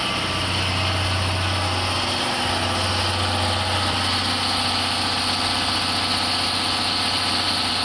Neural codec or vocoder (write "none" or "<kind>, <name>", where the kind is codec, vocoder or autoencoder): none